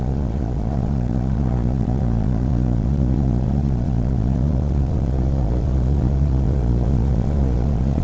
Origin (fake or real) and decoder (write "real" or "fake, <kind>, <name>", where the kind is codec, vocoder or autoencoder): fake, vocoder, Vocos